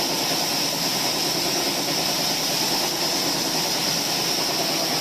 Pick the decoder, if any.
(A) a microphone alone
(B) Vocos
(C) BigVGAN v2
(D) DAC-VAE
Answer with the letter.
A